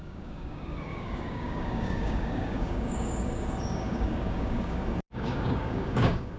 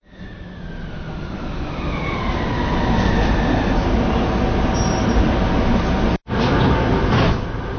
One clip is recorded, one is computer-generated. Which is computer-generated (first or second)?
first